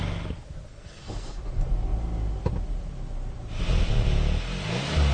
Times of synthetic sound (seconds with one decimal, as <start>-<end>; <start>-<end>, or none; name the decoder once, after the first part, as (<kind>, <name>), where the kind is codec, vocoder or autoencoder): 0.7-1.4 (codec, SNAC)